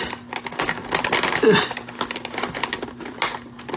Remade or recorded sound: recorded